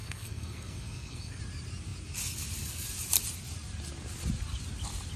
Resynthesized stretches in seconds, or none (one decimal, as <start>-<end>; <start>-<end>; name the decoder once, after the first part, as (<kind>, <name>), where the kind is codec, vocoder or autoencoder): 0.0-1.4 (codec, SNAC)